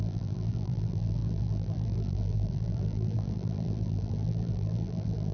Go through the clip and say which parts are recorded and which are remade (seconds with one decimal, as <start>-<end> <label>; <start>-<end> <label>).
0.0-5.3 remade